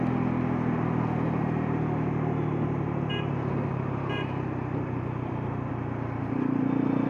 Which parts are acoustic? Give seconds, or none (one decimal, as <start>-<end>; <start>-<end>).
0.0-1.4; 5.7-7.1